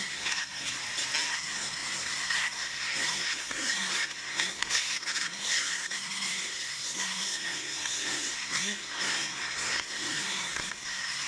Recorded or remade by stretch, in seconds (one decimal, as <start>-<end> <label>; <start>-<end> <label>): 0.0-0.8 remade; 0.8-1.3 recorded; 1.3-11.3 remade